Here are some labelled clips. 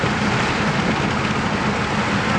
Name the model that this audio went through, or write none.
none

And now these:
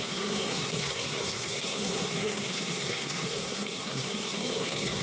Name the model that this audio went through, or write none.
codec, SNAC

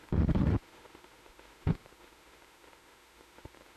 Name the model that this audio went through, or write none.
autoencoder, DAC-VAE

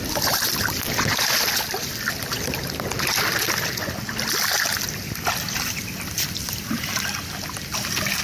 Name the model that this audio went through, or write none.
none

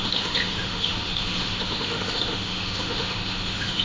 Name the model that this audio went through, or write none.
autoencoder, DAC-VAE